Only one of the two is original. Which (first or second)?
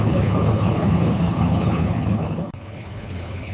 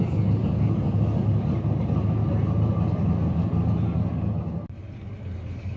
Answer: second